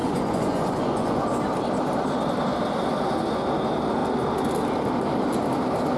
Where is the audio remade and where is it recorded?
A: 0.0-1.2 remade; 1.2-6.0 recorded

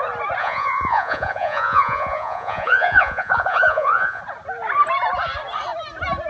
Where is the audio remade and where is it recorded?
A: 0.0-0.4 recorded; 0.4-4.2 remade; 4.2-6.3 recorded

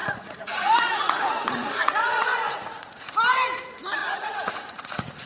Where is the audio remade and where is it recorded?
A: 0.0-3.1 remade; 3.1-4.0 recorded; 4.0-5.3 remade

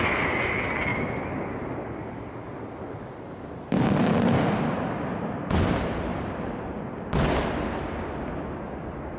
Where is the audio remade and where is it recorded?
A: 0.0-9.2 recorded

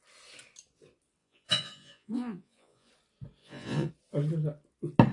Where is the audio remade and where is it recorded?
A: 0.0-1.2 recorded; 1.2-2.9 remade; 2.9-3.4 recorded; 3.4-3.9 remade; 3.9-5.1 recorded

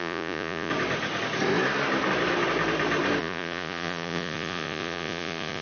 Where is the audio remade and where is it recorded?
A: 0.0-0.7 remade; 0.7-3.2 recorded; 3.2-5.6 remade